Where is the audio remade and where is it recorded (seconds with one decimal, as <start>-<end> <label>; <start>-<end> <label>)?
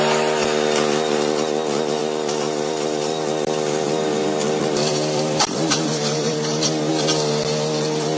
0.0-2.0 recorded; 2.0-6.9 remade; 6.9-8.2 recorded